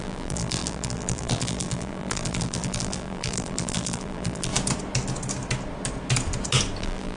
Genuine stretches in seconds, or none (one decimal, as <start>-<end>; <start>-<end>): 4.5-6.8